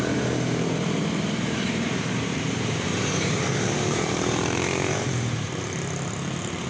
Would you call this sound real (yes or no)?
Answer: no